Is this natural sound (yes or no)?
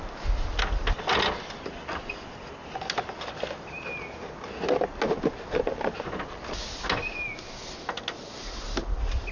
yes